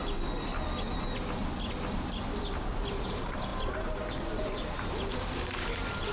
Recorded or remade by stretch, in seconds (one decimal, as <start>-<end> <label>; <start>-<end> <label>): 0.0-0.8 recorded; 0.8-1.4 remade; 1.4-1.9 recorded; 1.9-6.1 remade